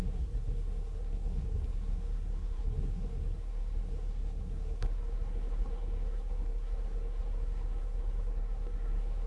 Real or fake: fake